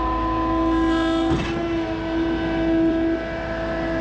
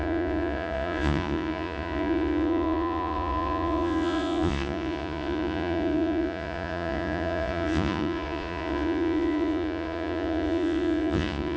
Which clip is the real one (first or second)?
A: first